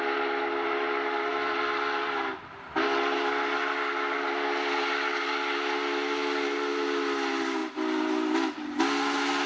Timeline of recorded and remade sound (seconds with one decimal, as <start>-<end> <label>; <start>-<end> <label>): 0.0-9.5 recorded